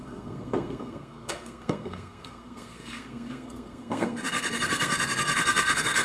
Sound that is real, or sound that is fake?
fake